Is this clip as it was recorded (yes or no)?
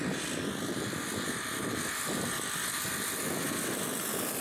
yes